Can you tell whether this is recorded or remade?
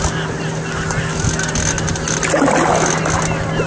recorded